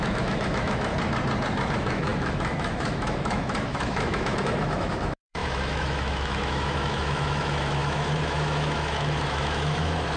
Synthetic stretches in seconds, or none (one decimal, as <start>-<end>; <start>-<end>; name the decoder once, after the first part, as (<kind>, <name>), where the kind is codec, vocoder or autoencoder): 0.0-0.9 (autoencoder, DAC-VAE); 1.7-10.2